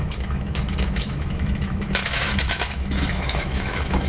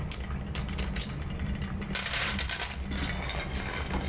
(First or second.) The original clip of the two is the second